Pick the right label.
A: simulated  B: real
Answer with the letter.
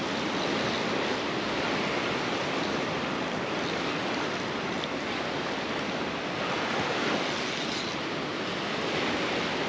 B